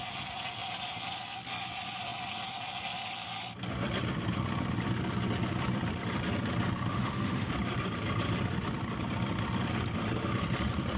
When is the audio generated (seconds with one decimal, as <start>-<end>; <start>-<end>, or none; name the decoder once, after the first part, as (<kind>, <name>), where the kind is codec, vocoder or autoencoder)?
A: 6.9-7.5 (autoencoder, DAC-VAE)